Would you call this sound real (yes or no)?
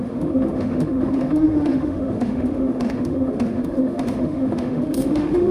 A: no